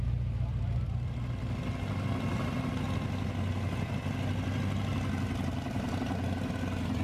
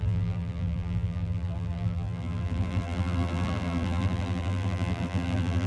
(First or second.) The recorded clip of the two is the first